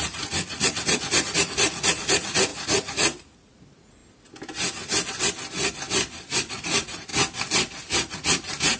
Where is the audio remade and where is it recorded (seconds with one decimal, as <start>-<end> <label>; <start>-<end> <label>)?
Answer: 0.0-4.0 remade; 4.0-6.5 recorded; 6.5-7.1 remade; 7.1-8.1 recorded; 8.1-8.8 remade